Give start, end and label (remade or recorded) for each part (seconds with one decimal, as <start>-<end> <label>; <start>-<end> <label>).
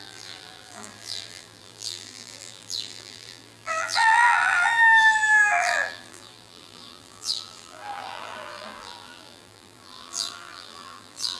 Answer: 0.0-11.4 remade